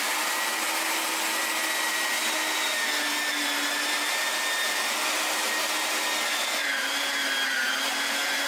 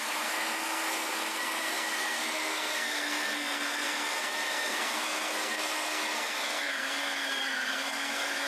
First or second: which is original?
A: first